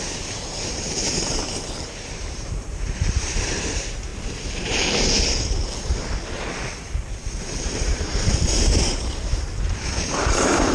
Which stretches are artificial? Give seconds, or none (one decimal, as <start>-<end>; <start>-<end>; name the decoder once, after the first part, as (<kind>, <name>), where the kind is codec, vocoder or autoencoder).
0.0-4.1 (vocoder, BigVGAN v2); 7.6-10.7